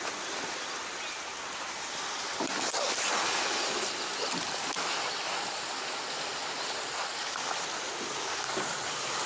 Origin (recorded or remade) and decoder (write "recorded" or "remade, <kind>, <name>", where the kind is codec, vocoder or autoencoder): recorded